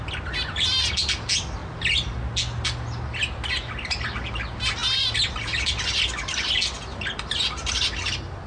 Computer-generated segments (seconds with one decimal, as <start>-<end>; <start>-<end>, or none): none